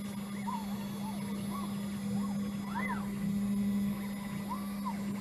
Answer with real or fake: real